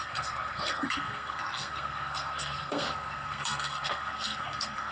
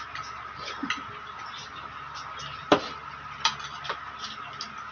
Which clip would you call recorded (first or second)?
second